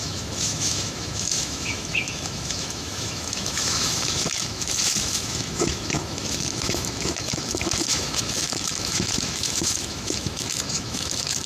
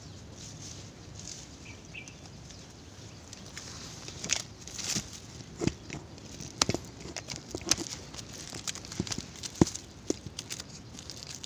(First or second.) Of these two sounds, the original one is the second